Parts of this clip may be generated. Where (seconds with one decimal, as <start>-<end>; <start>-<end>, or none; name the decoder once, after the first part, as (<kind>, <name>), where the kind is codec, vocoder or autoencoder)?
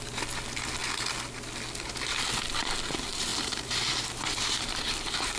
3.3-5.4 (vocoder, BigVGAN v2)